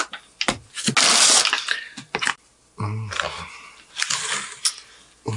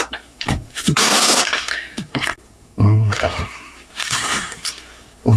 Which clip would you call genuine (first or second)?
first